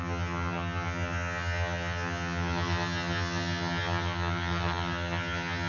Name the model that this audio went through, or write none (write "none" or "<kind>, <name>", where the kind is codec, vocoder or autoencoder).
vocoder, HiFi-GAN